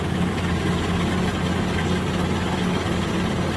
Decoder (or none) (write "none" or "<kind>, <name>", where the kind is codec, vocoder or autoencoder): none